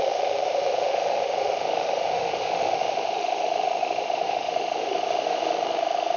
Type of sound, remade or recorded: remade